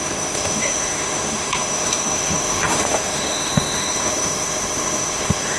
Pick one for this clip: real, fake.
fake